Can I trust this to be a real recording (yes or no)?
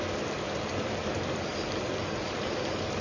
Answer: no